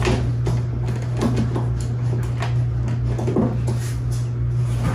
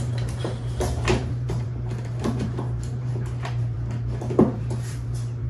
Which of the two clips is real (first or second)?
first